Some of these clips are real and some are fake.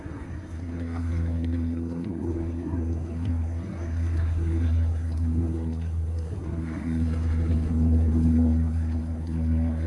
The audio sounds fake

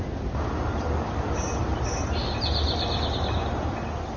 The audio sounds real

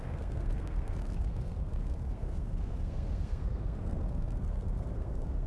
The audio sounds fake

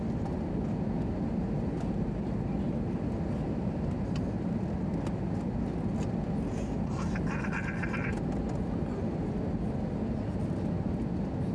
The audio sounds real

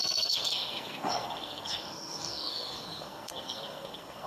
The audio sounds fake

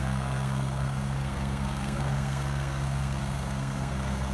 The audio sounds fake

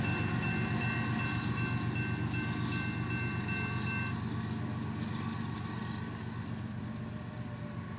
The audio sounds real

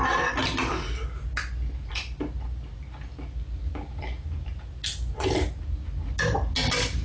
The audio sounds real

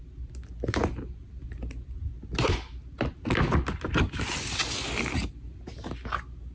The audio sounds real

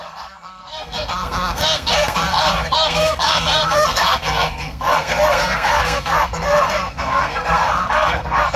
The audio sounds fake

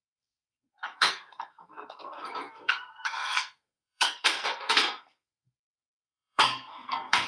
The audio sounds fake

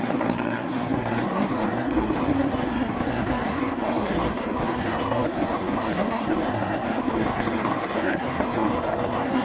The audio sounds fake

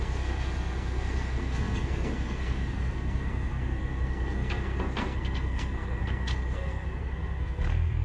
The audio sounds fake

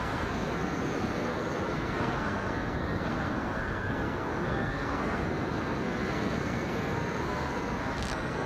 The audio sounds fake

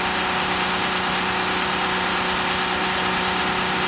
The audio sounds real